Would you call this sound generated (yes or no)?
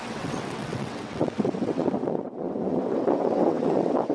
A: yes